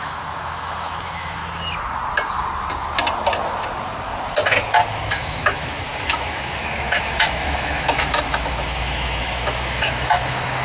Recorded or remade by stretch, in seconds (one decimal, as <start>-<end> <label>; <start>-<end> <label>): 0.0-1.4 remade; 1.4-5.1 recorded; 5.1-10.6 remade